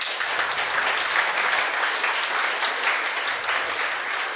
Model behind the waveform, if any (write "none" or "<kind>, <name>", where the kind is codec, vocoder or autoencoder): none